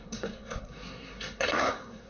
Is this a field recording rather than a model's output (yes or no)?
no